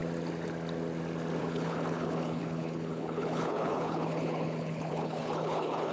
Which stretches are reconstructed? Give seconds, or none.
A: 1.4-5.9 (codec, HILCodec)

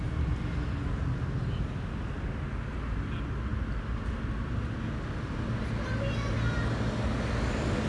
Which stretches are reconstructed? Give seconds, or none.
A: none

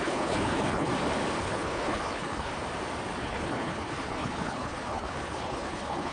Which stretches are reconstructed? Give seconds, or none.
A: 0.0-0.9 (codec, HILCodec); 1.4-2.5; 3.2-6.1

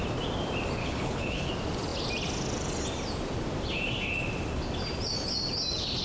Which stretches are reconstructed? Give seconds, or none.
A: 0.8-1.5 (codec, HILCodec)